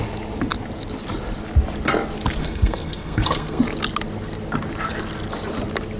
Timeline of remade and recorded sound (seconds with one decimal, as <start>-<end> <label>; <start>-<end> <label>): 0.0-2.4 recorded; 2.4-3.6 remade; 3.6-6.0 recorded